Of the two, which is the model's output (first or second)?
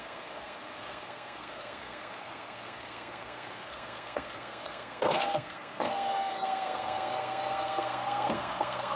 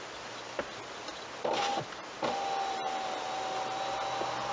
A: first